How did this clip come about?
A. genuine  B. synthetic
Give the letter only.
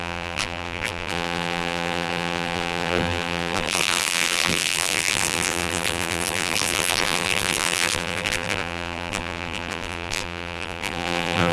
B